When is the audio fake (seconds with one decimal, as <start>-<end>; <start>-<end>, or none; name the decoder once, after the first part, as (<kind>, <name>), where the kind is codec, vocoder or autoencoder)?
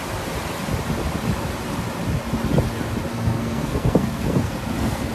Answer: 3.1-5.1 (codec, SNAC)